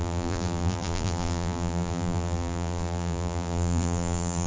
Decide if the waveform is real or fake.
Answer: fake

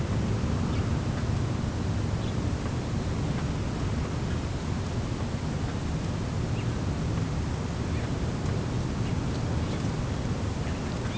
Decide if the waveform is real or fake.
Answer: real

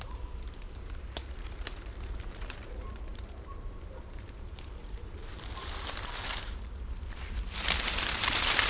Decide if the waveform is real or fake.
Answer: fake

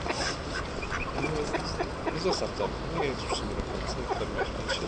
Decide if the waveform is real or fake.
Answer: real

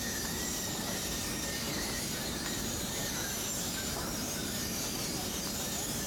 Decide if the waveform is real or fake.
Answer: fake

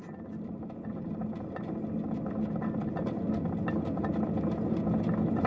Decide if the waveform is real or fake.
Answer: real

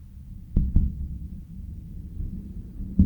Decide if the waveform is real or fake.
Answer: real